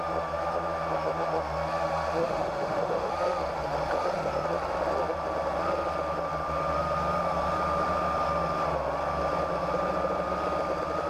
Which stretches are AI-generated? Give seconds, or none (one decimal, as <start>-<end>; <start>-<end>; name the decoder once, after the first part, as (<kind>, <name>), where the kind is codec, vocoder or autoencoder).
2.2-3.1 (autoencoder, DAC-VAE)